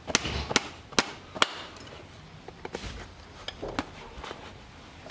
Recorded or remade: recorded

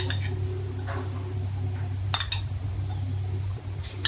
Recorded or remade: recorded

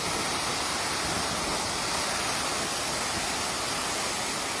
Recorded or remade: recorded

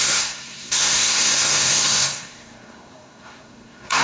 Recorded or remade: remade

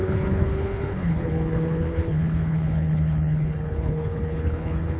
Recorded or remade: remade